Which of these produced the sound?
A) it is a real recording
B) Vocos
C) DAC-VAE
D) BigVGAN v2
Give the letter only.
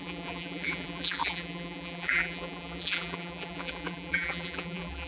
D